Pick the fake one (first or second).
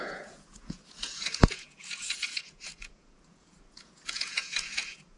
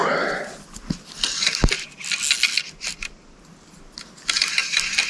first